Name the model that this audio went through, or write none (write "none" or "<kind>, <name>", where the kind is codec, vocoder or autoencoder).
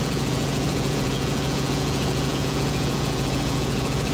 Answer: vocoder, Vocos